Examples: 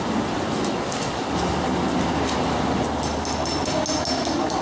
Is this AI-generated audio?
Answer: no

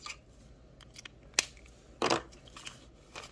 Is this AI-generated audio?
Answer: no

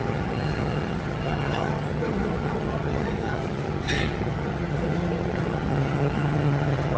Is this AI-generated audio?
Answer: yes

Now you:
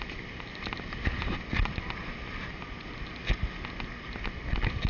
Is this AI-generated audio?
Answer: no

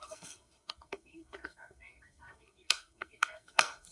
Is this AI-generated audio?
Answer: yes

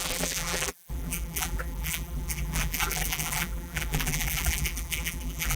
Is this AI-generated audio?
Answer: yes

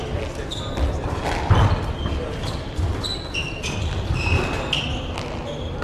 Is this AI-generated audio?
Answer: no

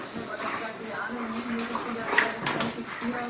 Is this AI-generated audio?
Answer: no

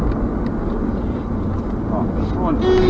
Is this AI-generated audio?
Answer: no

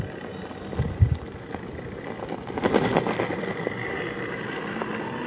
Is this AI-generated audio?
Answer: no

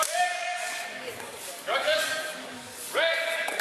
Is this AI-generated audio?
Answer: yes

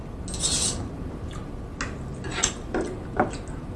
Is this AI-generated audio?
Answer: no